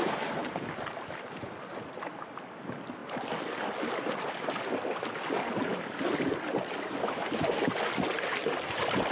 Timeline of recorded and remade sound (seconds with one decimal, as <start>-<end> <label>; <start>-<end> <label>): 0.0-9.1 recorded